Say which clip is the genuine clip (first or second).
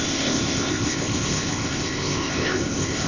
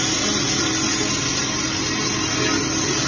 second